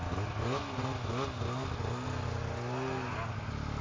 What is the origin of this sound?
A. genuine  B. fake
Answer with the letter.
A